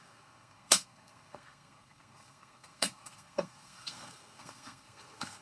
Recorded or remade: remade